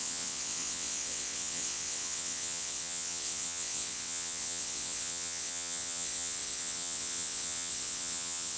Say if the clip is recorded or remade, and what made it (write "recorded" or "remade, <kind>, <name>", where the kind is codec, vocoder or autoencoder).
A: remade, vocoder, WaveNeXt